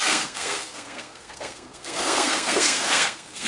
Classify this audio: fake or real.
fake